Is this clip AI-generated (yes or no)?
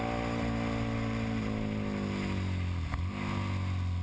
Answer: no